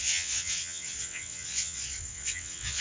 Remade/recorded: remade